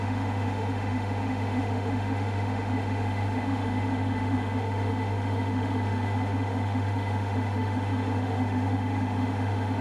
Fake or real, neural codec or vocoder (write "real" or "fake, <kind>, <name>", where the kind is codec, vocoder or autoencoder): fake, autoencoder, DAC-VAE